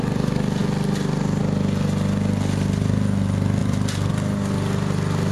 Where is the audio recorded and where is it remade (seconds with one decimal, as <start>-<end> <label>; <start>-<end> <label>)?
0.0-3.6 recorded; 3.6-4.1 remade; 4.1-5.3 recorded